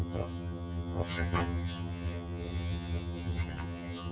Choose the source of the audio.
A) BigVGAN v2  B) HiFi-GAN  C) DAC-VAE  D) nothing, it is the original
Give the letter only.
B